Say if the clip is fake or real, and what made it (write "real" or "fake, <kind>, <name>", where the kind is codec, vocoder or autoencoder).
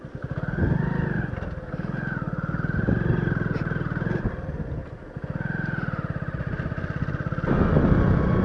real